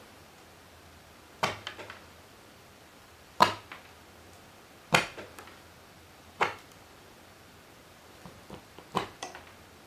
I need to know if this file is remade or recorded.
remade